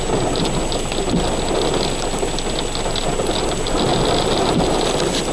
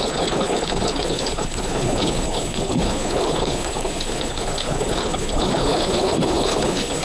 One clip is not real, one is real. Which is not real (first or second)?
second